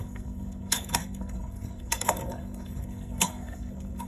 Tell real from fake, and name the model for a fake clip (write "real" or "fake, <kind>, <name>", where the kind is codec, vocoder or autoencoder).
fake, codec, SNAC